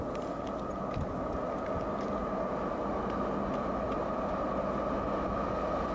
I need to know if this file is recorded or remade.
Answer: recorded